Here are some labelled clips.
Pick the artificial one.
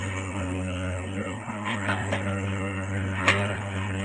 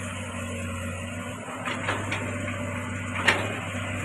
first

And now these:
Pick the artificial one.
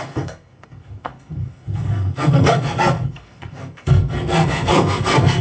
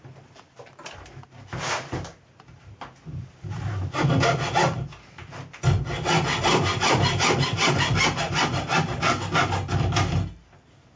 first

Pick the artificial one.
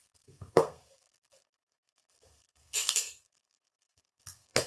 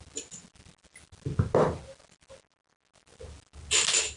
first